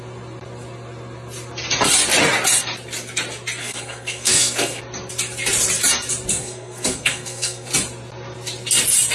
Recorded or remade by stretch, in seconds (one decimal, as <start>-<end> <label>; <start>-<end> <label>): 0.0-3.6 recorded; 3.6-4.8 remade; 4.8-6.3 recorded; 6.3-7.7 remade; 7.7-9.1 recorded

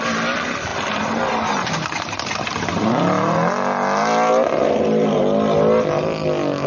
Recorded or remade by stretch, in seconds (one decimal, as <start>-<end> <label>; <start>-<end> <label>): 0.0-6.7 recorded

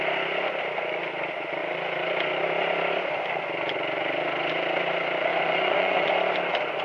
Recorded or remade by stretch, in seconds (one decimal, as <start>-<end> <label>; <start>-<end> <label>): 0.0-5.3 recorded; 5.3-6.1 remade; 6.1-6.8 recorded

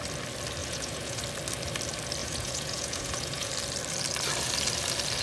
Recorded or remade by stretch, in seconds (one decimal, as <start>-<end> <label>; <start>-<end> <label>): 0.0-0.6 recorded; 0.6-1.2 remade; 1.2-2.2 recorded; 2.2-3.5 remade; 3.5-5.2 recorded

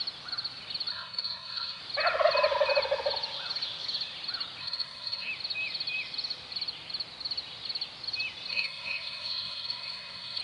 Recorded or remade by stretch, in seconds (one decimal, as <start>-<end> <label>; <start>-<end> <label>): 0.0-0.9 recorded; 0.9-1.8 remade; 1.8-4.6 recorded; 4.6-5.3 remade; 5.3-8.5 recorded; 8.5-10.4 remade